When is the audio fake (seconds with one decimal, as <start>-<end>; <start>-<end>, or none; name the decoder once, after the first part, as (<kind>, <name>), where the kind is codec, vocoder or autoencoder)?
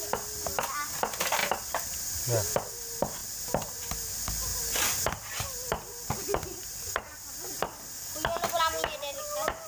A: none